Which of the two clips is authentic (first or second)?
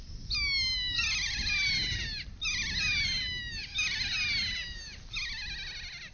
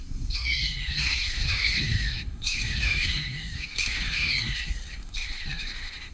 first